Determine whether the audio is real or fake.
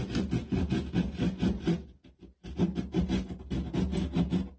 real